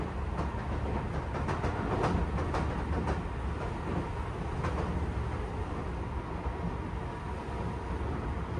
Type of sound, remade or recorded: recorded